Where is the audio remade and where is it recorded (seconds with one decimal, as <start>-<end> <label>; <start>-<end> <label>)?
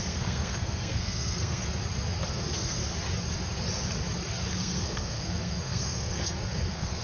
0.0-1.6 remade; 1.6-2.3 recorded; 2.3-2.8 remade; 2.8-4.5 recorded; 4.5-7.0 remade